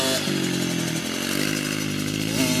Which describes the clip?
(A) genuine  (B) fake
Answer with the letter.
A